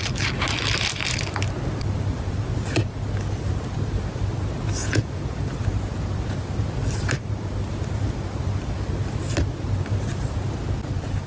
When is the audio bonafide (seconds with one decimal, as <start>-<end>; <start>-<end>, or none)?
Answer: 0.0-4.8; 5.4-11.3